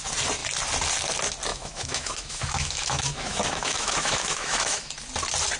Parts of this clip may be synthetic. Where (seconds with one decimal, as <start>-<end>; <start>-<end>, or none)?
1.5-4.9